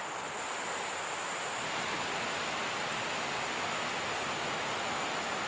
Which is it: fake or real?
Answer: real